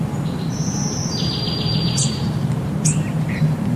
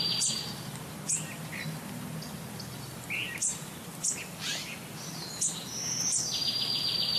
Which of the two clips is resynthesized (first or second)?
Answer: first